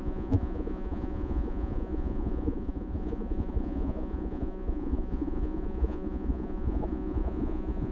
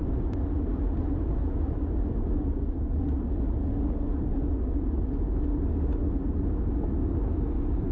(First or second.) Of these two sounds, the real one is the second